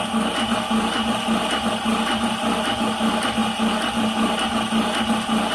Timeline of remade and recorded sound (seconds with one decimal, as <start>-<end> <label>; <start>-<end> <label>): 0.0-5.5 recorded